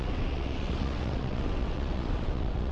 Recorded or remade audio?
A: remade